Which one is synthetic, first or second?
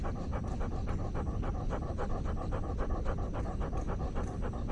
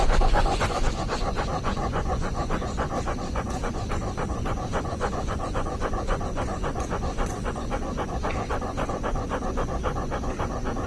second